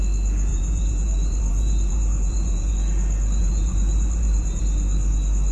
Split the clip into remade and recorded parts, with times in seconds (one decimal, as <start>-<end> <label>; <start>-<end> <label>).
0.0-0.5 recorded; 0.5-2.7 remade; 2.7-3.4 recorded; 3.4-4.6 remade; 4.6-5.5 recorded